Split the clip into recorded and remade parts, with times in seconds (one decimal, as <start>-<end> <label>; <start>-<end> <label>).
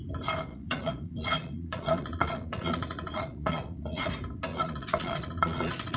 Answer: 0.0-0.5 recorded; 0.5-4.1 remade; 4.1-4.5 recorded; 4.5-6.0 remade